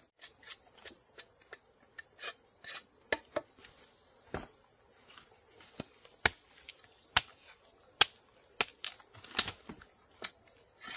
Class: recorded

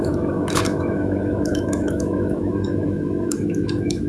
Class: remade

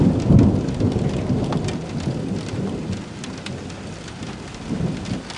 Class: recorded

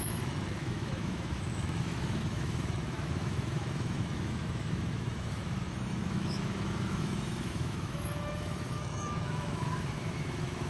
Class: remade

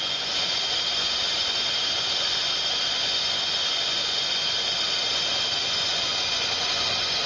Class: remade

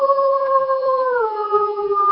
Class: remade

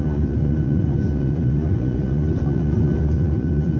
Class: remade